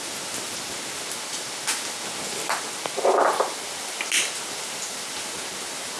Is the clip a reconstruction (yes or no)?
no